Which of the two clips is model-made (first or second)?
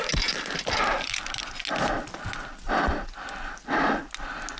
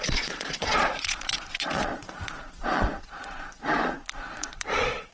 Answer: second